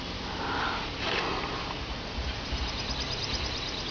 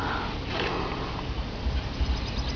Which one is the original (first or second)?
second